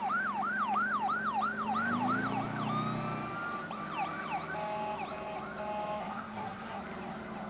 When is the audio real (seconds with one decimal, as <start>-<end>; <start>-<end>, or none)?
0.0-6.0; 6.8-7.5